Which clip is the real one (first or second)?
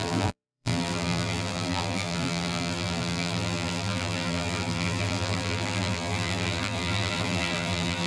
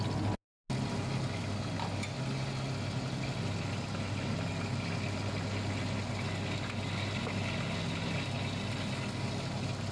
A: second